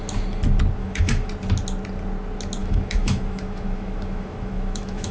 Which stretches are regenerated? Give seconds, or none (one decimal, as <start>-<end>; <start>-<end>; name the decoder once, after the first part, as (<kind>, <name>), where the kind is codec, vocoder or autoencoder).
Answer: 0.8-1.3 (autoencoder, DAC-VAE); 2.6-5.1